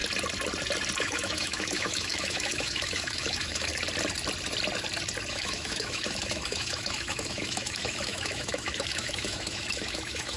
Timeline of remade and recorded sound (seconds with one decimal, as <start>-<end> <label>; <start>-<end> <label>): 0.0-1.0 recorded; 1.0-3.7 remade; 3.7-5.3 recorded; 5.3-10.4 remade